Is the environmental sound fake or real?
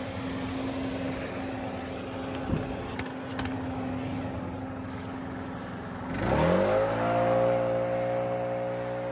real